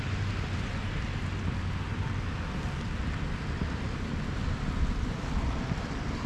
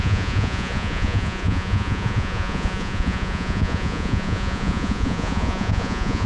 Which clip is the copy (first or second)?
second